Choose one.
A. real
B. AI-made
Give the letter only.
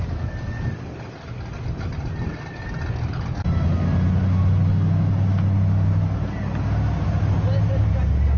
A